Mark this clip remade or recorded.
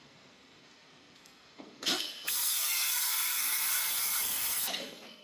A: remade